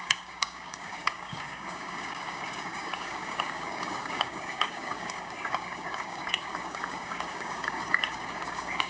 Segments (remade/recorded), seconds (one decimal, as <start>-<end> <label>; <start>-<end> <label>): 0.0-8.9 remade